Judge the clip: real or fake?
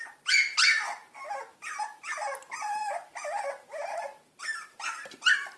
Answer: real